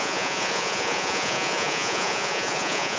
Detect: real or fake fake